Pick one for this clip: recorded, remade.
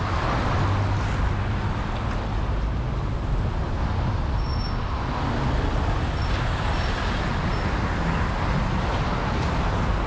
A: recorded